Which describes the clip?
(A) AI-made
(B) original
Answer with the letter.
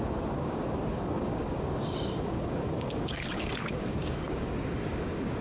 A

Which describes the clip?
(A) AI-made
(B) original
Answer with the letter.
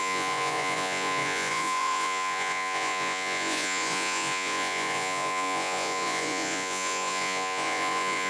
A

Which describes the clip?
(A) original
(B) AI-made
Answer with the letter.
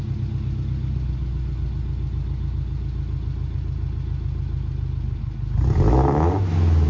A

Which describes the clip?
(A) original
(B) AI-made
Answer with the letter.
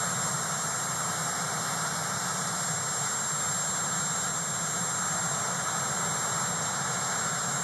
A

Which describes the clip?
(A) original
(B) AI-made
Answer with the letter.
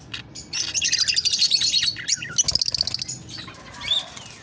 A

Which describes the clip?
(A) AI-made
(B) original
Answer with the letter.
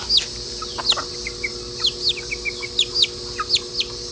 B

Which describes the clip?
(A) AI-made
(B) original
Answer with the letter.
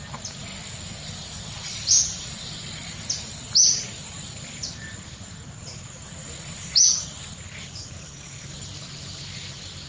B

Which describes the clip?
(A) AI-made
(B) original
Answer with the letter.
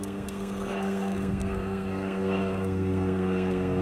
A